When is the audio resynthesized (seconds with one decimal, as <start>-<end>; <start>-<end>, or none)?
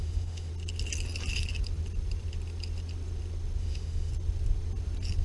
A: 0.0-0.5; 3.6-4.1